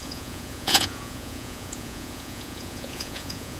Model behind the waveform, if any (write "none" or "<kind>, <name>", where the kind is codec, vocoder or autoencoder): vocoder, Vocos